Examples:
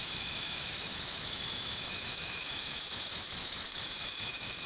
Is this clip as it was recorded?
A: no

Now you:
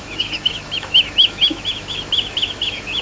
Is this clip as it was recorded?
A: no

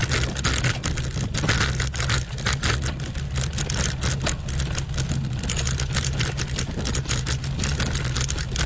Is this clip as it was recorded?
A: yes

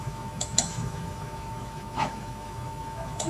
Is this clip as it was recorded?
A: no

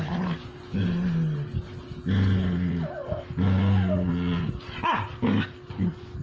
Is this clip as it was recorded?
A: yes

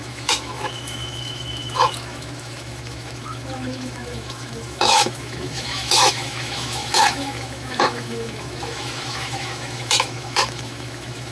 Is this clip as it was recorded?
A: no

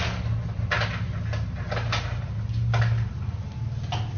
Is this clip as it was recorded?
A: yes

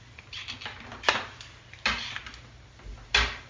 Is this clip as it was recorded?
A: yes